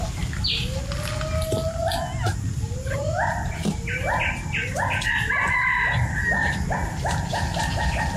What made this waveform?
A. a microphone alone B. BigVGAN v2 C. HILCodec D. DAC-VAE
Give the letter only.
A